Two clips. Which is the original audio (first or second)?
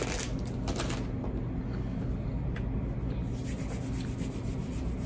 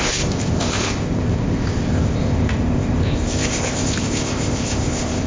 first